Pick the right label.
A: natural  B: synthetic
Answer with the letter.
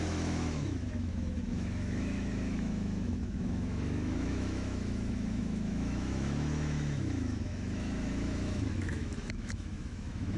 B